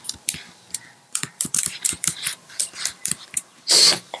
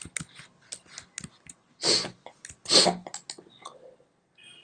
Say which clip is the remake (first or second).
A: first